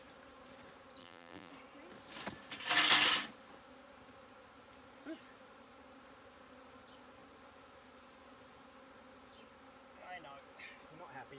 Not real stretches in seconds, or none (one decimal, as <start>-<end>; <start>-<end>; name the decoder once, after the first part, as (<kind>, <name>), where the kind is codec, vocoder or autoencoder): 1.0-1.5 (vocoder, BigVGAN v2)